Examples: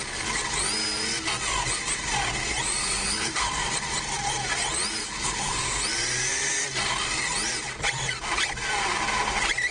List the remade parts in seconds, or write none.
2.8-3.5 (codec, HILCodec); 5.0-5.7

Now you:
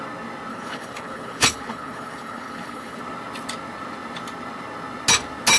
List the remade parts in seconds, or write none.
0.5-3.0 (codec, HILCodec)

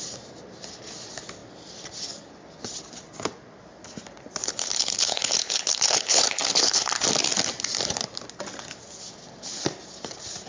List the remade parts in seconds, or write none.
4.4-6.9 (codec, HILCodec)

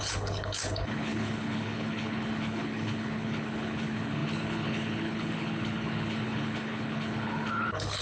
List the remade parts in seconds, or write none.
0.0-8.0 (codec, HILCodec)

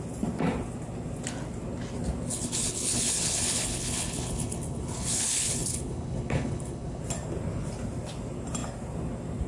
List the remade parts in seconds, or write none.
2.3-7.0 (codec, HILCodec)

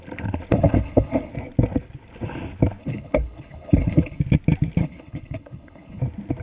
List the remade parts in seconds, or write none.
0.5-1.3 (codec, HILCodec); 2.8-4.2; 4.8-6.0

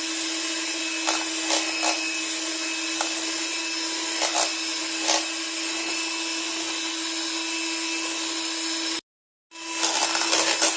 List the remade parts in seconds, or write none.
none